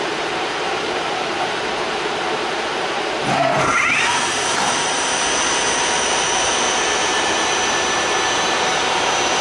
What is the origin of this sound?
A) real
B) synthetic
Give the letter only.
B